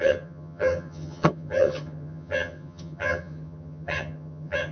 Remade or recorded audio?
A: remade